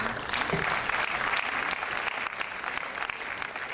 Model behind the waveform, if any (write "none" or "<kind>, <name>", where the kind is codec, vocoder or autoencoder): none